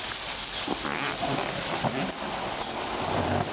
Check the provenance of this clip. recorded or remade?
recorded